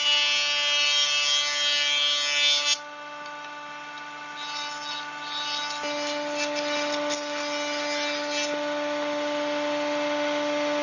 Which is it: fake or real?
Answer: real